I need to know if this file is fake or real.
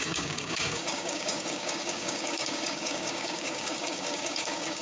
fake